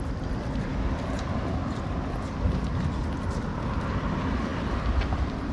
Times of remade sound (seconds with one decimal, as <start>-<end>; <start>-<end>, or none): none